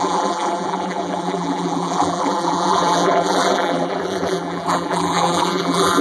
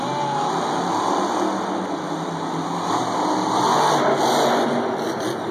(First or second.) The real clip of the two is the second